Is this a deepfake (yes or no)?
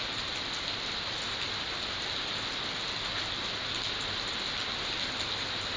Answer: no